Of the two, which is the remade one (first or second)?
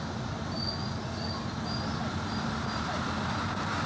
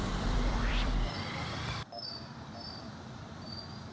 second